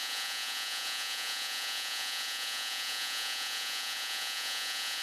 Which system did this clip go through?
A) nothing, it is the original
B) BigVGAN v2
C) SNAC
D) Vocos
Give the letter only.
D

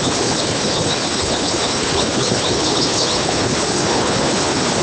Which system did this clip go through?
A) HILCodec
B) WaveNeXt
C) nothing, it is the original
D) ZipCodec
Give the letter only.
A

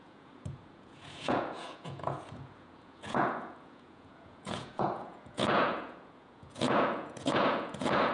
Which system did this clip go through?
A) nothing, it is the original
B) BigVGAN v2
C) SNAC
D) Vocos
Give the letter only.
D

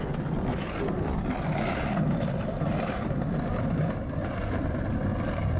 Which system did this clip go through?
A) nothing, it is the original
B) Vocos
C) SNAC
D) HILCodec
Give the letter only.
A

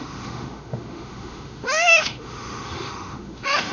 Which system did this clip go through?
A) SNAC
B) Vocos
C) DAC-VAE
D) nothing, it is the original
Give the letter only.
C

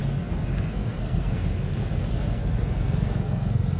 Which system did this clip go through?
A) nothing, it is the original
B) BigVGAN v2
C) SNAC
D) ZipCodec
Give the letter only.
C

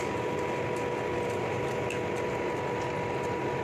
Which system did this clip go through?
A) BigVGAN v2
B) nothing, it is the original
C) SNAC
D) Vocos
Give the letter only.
B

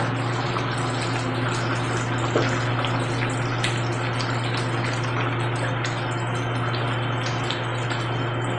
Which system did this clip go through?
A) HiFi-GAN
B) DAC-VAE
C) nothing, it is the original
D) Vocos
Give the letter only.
C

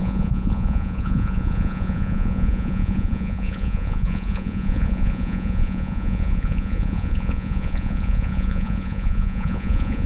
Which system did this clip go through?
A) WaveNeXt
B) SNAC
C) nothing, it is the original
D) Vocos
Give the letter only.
D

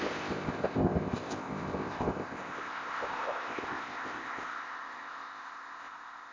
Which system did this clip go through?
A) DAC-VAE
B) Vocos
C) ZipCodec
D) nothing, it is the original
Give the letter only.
C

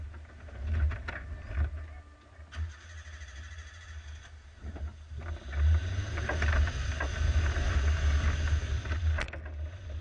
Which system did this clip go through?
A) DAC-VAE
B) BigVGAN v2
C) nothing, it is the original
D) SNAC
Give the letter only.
C